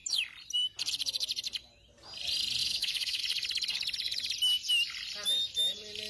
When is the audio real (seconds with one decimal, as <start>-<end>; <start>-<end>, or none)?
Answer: 0.0-2.6; 3.2-6.1